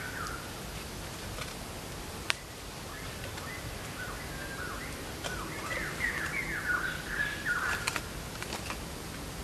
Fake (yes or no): no